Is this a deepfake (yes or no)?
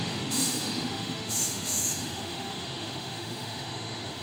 yes